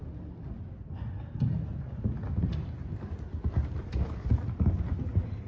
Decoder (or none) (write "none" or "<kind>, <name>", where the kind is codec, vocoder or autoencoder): none